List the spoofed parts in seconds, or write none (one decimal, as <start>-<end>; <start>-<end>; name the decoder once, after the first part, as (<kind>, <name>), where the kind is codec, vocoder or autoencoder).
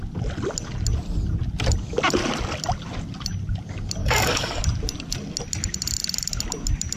4.0-4.6 (codec, DAC)